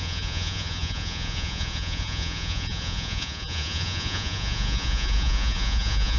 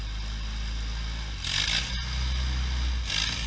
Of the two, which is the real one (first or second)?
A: second